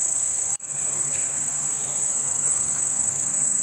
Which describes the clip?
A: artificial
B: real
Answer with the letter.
A